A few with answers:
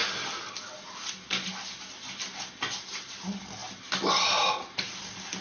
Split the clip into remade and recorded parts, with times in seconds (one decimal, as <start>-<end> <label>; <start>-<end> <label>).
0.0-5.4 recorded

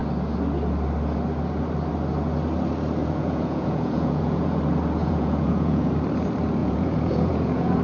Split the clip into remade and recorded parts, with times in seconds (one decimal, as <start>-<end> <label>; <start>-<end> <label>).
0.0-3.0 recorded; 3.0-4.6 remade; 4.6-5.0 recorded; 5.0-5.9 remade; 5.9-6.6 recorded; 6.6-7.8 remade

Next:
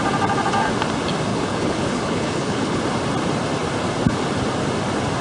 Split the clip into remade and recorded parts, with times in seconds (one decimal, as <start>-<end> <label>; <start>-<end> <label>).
0.0-1.3 recorded; 1.3-2.8 remade; 2.8-5.2 recorded